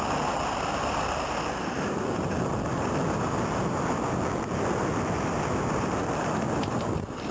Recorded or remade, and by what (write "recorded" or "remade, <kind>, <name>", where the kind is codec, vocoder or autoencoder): recorded